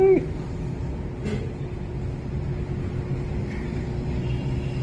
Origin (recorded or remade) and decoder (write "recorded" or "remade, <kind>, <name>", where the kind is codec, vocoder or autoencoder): recorded